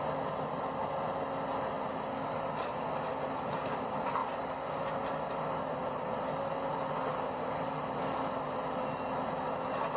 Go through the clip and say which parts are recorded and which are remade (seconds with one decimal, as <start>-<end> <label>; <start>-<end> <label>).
0.0-10.0 recorded